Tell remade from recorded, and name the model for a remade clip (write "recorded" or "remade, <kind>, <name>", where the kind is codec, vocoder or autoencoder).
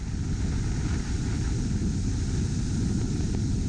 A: recorded